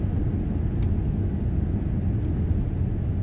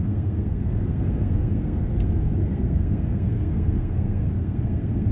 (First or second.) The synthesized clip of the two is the second